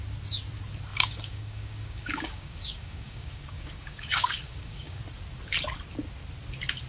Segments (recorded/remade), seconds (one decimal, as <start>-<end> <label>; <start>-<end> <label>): 0.0-0.9 recorded; 0.9-5.0 remade; 5.0-6.9 recorded